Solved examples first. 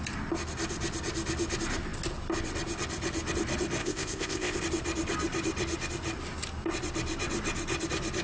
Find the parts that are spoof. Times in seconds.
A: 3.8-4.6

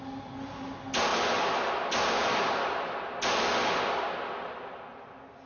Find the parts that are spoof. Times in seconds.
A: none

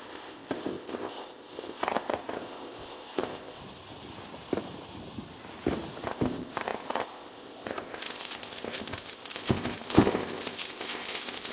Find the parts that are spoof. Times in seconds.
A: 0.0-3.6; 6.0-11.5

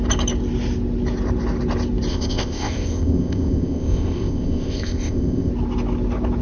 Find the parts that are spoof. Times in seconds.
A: 2.1-5.5

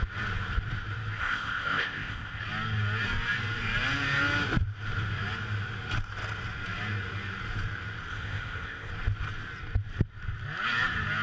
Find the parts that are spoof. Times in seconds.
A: 1.2-2.4; 8.1-8.9